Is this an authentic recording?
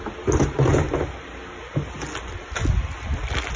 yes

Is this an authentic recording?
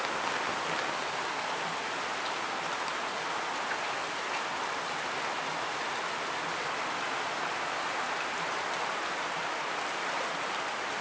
yes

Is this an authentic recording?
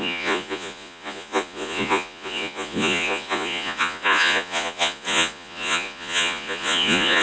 no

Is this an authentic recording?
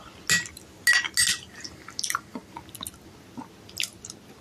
yes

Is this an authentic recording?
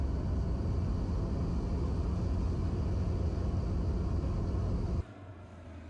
yes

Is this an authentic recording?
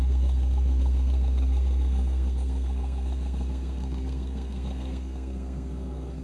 no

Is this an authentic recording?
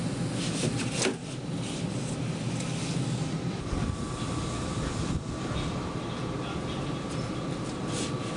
yes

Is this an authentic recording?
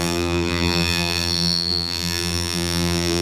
no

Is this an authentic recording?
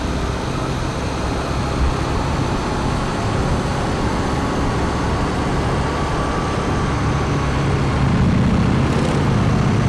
yes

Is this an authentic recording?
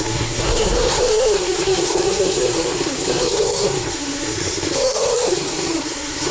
no